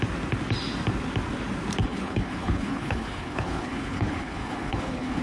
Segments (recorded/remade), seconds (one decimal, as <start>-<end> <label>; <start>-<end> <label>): 0.0-1.8 recorded; 1.8-5.2 remade